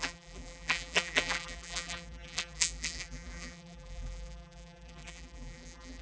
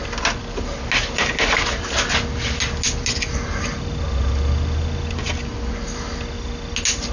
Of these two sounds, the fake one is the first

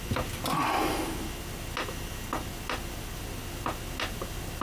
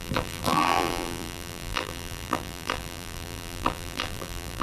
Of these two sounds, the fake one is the second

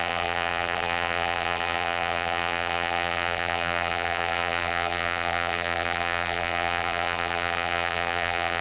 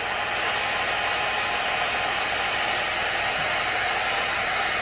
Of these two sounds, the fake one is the first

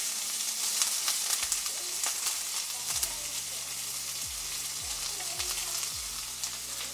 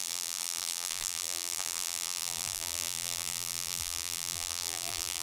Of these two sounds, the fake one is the second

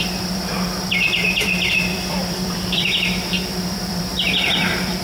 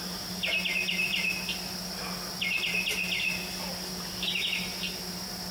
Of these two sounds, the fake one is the first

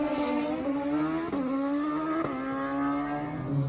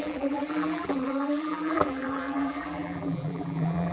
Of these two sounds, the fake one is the second